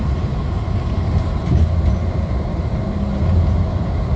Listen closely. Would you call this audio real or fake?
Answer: real